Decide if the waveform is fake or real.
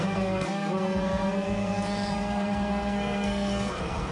fake